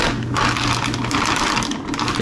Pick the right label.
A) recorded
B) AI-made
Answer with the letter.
A